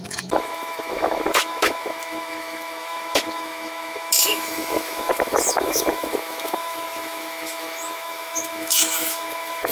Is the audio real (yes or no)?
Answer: no